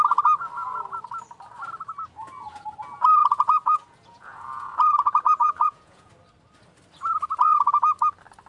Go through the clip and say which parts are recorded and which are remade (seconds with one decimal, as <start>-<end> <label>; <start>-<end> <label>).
0.0-3.2 recorded; 3.2-6.1 remade; 6.1-8.5 recorded